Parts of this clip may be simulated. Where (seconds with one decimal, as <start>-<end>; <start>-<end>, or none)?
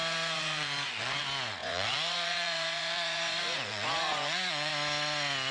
0.0-1.2; 1.6-4.7